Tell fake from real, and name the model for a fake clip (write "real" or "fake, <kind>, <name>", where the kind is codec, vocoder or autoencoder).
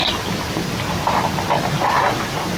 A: real